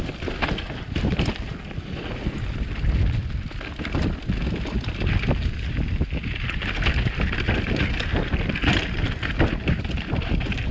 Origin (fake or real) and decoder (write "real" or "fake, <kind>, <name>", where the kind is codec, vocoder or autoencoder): real